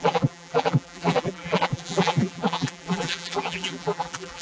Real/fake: fake